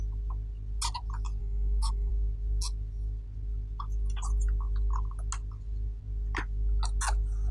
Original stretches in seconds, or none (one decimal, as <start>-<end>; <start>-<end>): 0.0-1.4; 2.1-7.5